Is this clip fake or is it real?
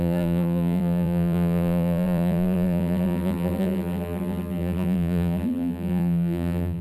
fake